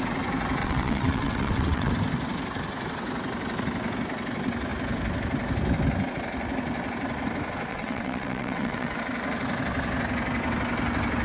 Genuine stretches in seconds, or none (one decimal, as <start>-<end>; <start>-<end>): 0.0-0.6; 1.9-7.7; 9.0-11.2